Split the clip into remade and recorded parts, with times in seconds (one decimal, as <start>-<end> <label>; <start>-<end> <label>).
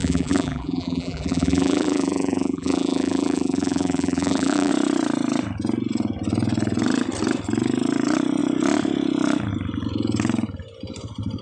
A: 0.0-4.7 remade; 4.7-11.4 recorded